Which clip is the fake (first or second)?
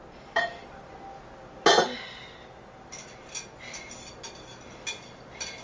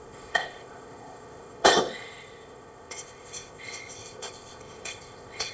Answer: second